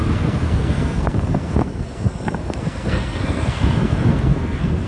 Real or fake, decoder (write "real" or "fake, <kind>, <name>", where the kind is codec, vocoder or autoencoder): fake, codec, SNAC